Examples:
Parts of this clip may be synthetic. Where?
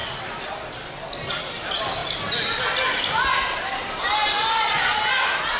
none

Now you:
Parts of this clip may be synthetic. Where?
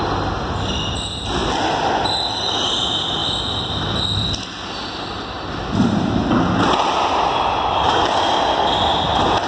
none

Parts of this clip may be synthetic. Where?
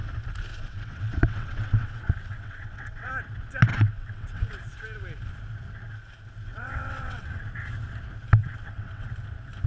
0.5-3.1 (vocoder, WaveNeXt); 3.7-4.4; 6.5-7.4; 8.4-9.1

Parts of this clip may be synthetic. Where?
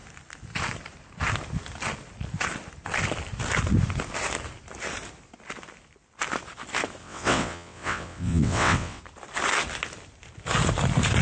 7.0-9.0 (vocoder, WaveNeXt)